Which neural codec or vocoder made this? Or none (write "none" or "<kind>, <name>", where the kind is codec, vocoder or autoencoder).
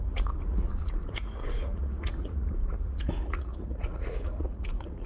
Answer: vocoder, Vocos